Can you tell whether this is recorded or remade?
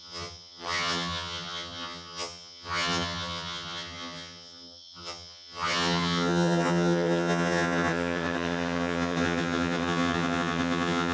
remade